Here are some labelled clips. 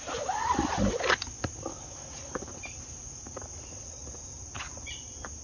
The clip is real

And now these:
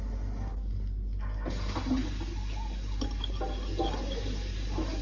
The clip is real